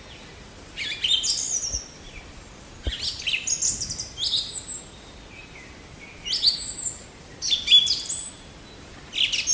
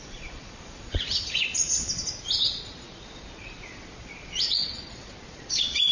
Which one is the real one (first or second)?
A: first